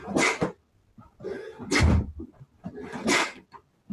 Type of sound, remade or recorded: recorded